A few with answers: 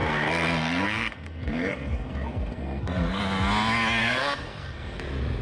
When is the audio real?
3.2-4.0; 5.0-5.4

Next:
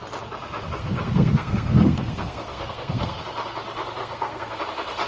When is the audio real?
0.0-0.8; 3.2-4.0; 4.6-5.1

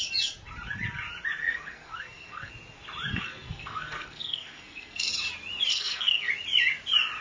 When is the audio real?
0.0-1.4; 2.5-3.1; 5.1-5.7; 6.3-7.2